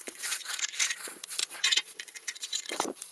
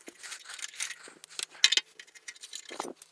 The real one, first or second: second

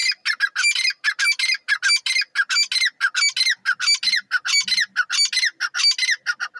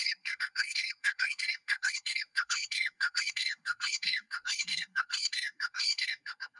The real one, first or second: first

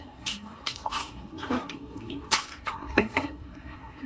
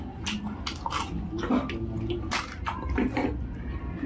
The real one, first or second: second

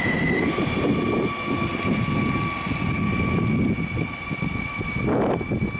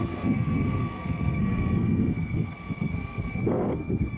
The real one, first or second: first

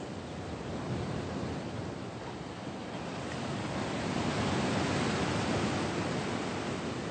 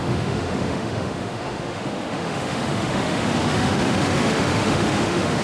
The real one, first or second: first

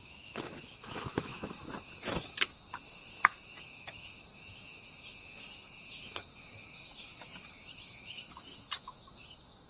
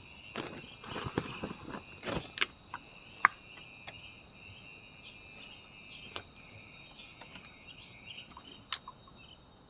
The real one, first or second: second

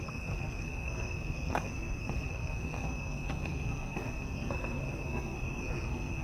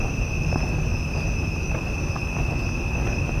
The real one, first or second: second